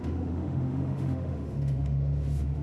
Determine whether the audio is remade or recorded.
remade